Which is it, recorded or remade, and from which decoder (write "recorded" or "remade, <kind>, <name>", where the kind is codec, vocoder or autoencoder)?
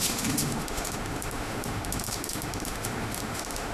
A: remade, autoencoder, DAC-VAE